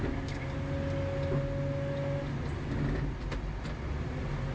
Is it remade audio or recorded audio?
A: recorded